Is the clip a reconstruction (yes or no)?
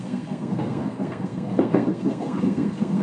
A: yes